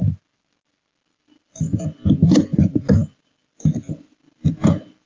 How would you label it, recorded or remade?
recorded